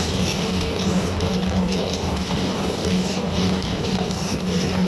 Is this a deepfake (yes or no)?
yes